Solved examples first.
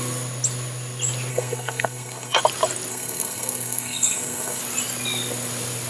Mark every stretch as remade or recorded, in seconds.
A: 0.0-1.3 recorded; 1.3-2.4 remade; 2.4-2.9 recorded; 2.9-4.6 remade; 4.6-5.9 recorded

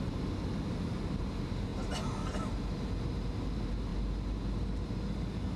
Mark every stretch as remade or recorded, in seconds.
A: 0.0-5.6 recorded

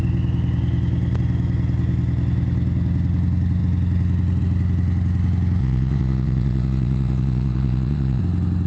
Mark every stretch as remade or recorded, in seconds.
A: 0.0-5.6 recorded; 5.6-8.2 remade; 8.2-8.7 recorded

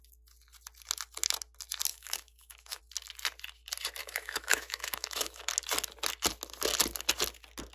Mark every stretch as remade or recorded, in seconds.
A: 0.0-1.9 recorded; 1.9-2.8 remade; 2.8-4.0 recorded; 4.0-5.5 remade; 5.5-7.7 recorded

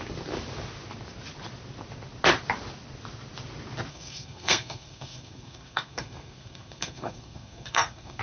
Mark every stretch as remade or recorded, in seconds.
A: 0.0-3.9 recorded; 3.9-8.2 remade

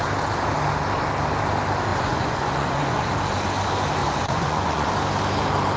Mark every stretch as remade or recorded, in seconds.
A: 0.0-1.9 recorded; 1.9-3.1 remade; 3.1-4.0 recorded; 4.0-4.9 remade; 4.9-5.8 recorded

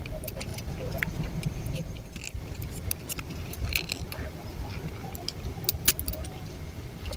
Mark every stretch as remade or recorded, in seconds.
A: 0.0-7.2 recorded

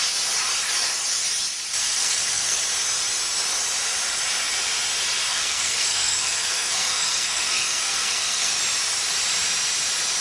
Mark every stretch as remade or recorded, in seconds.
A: 0.0-1.8 recorded; 1.8-2.6 remade; 2.6-5.3 recorded; 5.3-8.6 remade; 8.6-10.2 recorded